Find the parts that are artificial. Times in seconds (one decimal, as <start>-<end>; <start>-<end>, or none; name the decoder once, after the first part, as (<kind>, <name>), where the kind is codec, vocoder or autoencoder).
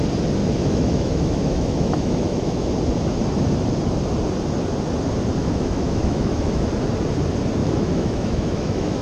0.4-2.7 (autoencoder, DAC-VAE); 5.4-6.7; 7.6-9.0